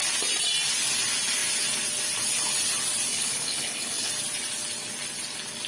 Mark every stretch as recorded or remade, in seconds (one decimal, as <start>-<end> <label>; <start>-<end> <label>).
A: 0.0-3.1 recorded; 3.1-4.1 remade; 4.1-5.7 recorded